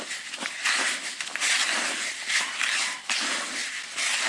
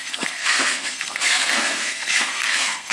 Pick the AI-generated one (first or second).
second